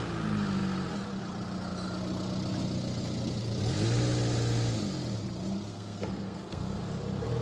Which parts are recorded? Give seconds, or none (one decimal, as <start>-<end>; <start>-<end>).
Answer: 0.0-5.7; 6.8-7.4